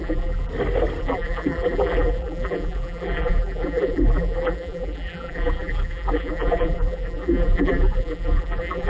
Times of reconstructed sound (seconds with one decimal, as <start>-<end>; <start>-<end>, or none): 0.0-0.5; 1.0-8.9